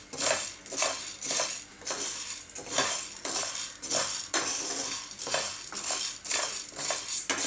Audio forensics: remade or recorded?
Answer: recorded